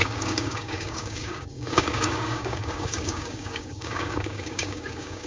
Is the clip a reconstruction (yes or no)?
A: yes